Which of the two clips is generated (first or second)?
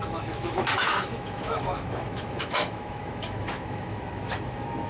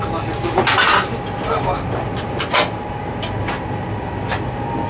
first